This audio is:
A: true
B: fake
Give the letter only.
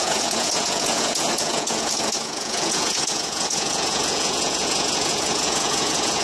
B